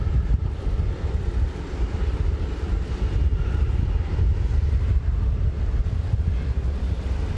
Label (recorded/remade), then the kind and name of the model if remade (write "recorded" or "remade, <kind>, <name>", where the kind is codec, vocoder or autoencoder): recorded